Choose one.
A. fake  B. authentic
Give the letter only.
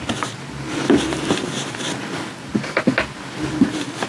B